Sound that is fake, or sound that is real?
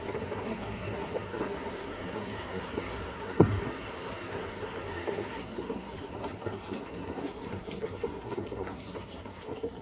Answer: fake